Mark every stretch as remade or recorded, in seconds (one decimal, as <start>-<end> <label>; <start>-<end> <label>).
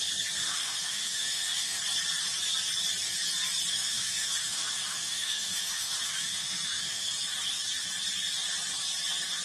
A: 0.0-0.4 recorded; 0.4-1.8 remade; 1.8-3.7 recorded; 3.7-7.1 remade; 7.1-9.4 recorded